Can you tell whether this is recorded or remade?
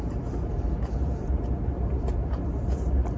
remade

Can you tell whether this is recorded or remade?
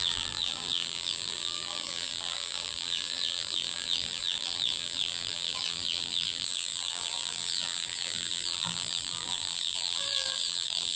remade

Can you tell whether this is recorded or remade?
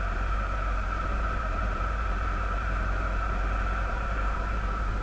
remade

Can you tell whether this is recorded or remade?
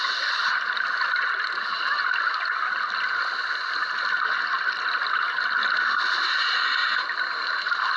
recorded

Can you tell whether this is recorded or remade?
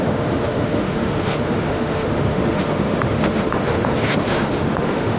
remade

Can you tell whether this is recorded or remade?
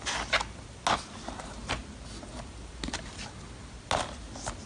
recorded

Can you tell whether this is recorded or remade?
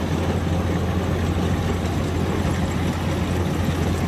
recorded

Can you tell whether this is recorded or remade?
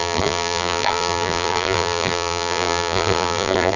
remade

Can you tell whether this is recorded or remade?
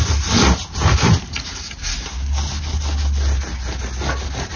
recorded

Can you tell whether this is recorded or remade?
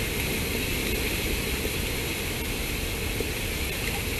recorded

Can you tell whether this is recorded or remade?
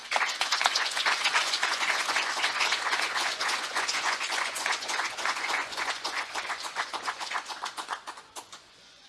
remade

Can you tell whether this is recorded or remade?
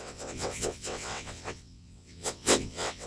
remade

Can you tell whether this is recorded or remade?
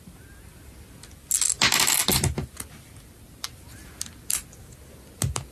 recorded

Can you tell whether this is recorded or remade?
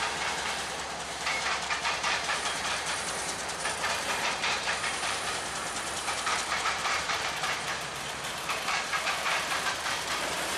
remade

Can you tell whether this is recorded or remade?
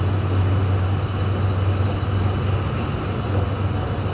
recorded